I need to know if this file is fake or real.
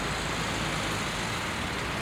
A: real